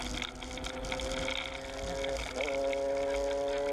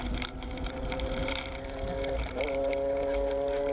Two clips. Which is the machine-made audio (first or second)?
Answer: second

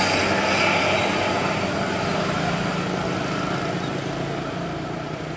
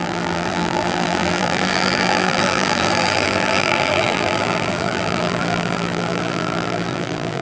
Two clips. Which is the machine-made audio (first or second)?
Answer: second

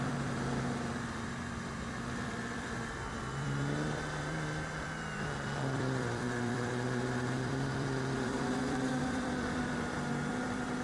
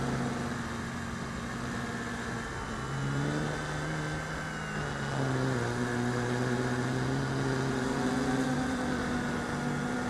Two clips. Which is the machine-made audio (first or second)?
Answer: first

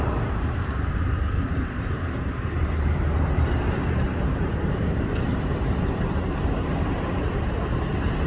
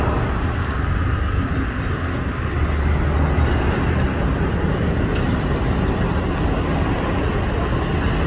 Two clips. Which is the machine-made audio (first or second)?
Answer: first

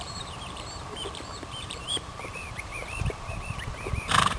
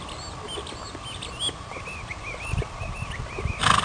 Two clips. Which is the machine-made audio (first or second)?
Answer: first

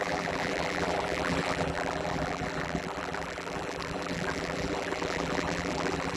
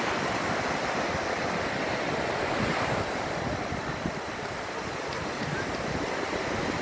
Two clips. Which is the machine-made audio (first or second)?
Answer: first